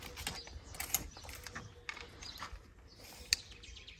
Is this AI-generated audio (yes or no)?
no